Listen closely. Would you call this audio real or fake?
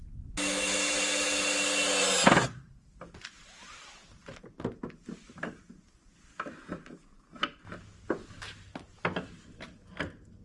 real